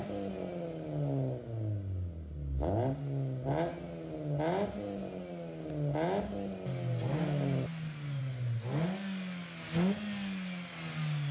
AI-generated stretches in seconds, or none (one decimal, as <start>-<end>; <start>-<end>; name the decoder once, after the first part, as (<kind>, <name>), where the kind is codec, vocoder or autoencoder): none